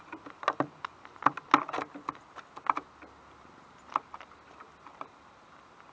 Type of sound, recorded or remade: recorded